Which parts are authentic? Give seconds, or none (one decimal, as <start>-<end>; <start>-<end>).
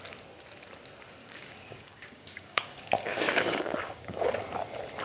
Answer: 0.0-1.2; 4.2-5.0